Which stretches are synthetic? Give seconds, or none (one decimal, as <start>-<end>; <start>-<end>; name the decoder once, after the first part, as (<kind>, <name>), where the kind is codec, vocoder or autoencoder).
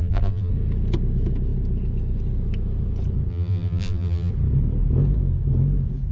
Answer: 0.0-0.5 (vocoder, BigVGAN v2); 3.3-4.3